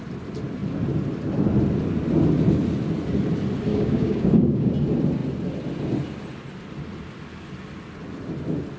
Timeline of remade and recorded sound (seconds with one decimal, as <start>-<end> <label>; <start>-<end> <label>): 0.0-3.7 recorded; 3.7-4.7 remade; 4.7-8.8 recorded